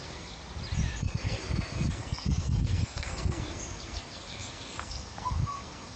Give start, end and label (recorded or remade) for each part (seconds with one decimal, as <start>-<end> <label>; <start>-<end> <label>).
0.0-0.4 remade; 0.4-1.0 recorded; 1.0-6.0 remade